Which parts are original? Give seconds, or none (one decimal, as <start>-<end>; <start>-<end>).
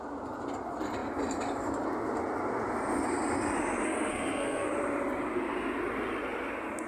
0.0-4.1; 4.7-6.9